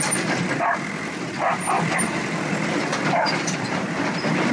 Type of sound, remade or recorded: remade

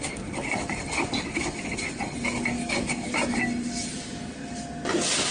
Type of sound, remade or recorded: recorded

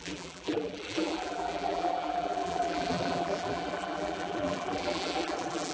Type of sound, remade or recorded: remade